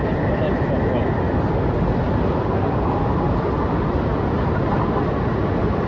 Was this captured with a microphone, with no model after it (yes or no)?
yes